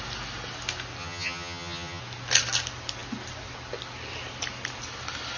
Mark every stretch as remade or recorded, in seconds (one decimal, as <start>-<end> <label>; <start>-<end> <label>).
0.0-1.0 recorded; 1.0-2.0 remade; 2.0-5.4 recorded